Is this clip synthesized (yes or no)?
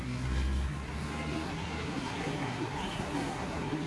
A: yes